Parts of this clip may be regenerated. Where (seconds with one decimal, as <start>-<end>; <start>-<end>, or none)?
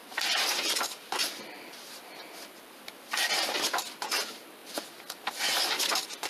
0.0-3.8